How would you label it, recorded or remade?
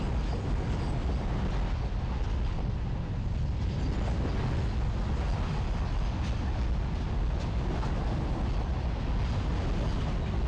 recorded